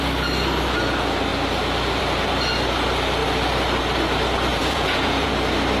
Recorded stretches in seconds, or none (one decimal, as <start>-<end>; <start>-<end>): 0.0-4.5; 5.3-5.8